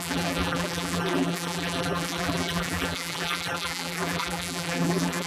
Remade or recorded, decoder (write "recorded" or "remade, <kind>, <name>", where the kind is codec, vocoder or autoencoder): remade, vocoder, BigVGAN v2